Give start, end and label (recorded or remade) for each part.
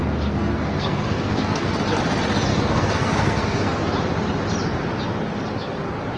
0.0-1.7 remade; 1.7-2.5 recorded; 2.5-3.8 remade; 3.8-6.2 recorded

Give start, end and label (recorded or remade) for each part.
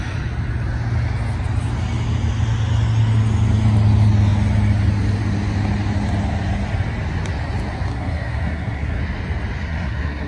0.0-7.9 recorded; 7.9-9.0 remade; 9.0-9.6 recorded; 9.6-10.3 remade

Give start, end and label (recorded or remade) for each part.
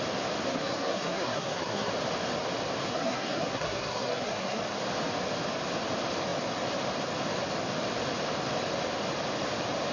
0.0-0.5 recorded; 0.5-1.9 remade; 1.9-2.9 recorded; 2.9-4.6 remade; 4.6-9.9 recorded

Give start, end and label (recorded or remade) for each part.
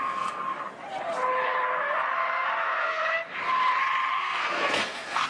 0.0-0.4 remade; 0.4-2.6 recorded; 2.6-3.0 remade; 3.0-4.2 recorded; 4.2-5.3 remade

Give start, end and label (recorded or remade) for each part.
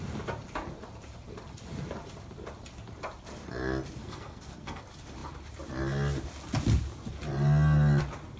0.0-4.0 recorded; 4.0-4.8 remade; 4.8-8.4 recorded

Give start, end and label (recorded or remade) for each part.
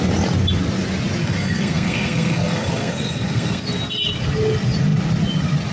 0.0-1.2 recorded; 1.2-3.6 remade; 3.6-5.7 recorded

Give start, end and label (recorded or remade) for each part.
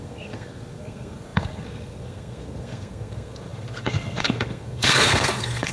0.0-5.7 remade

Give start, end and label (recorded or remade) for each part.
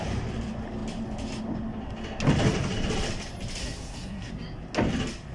0.0-3.6 recorded; 3.6-4.3 remade; 4.3-5.3 recorded